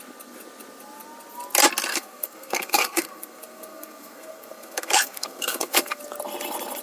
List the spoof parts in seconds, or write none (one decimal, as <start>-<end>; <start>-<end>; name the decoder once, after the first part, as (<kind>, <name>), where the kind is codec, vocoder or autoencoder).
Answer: 1.9-6.0 (codec, SNAC)